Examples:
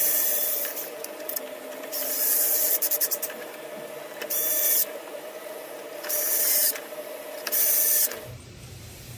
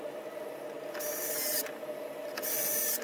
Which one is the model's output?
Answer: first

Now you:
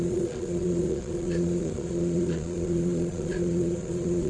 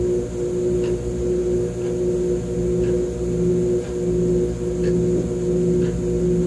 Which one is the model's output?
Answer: first